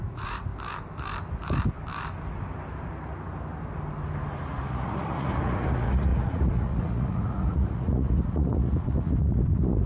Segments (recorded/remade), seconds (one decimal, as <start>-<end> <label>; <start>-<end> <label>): 0.0-0.5 remade; 0.5-4.7 recorded; 4.7-9.9 remade